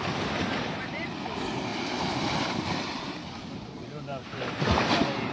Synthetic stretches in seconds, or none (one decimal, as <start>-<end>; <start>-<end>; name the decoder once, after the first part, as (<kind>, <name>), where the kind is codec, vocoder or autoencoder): 0.0-1.7 (vocoder, BigVGAN v2)

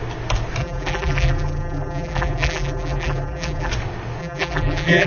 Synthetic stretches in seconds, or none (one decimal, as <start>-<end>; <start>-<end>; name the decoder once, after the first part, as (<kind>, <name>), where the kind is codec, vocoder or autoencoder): 0.6-3.7 (vocoder, BigVGAN v2); 4.2-5.1

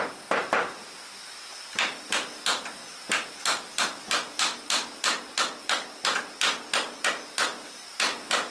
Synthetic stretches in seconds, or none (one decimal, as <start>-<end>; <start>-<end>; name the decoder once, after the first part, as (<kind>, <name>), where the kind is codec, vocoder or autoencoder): none

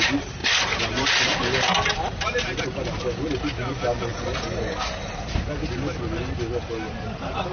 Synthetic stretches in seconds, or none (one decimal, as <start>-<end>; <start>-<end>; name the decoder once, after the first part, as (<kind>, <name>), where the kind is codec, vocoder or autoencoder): 0.4-2.6 (vocoder, BigVGAN v2)